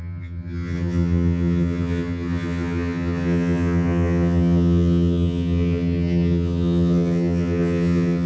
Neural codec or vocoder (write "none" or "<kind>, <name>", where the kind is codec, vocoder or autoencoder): vocoder, HiFi-GAN